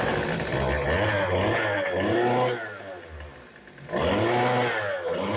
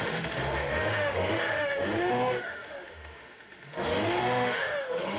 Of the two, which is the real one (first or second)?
first